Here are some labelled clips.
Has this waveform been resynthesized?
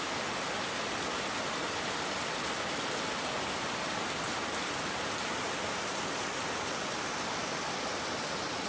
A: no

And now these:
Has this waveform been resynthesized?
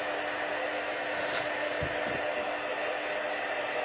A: no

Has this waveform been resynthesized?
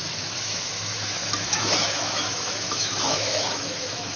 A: yes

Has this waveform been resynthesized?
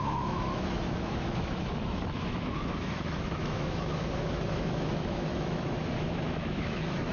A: yes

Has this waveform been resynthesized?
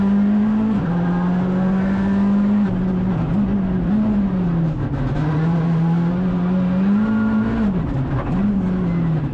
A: no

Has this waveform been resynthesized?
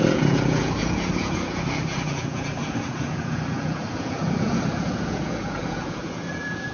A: yes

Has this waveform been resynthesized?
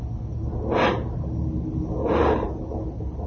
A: no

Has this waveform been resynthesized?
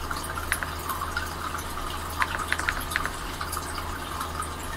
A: no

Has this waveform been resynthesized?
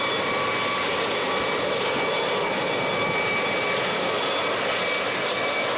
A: no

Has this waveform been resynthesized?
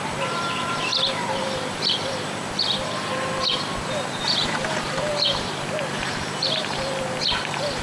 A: yes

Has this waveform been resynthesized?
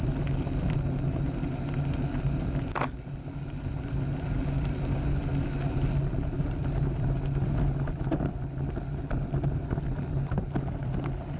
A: no